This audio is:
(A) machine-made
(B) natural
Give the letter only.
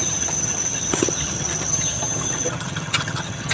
A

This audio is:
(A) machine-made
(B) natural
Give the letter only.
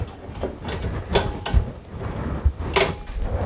B